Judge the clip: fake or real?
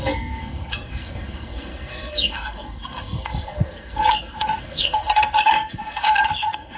fake